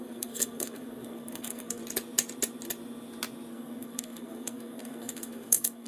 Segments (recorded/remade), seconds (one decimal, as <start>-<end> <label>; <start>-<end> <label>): 0.0-1.8 remade; 1.8-3.5 recorded; 3.5-5.9 remade